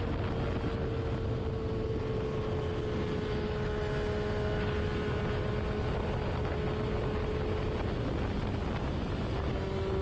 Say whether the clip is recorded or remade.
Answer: recorded